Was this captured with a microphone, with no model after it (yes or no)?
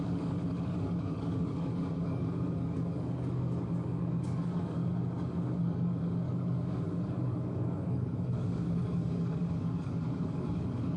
no